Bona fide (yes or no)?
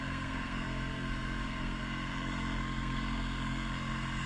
no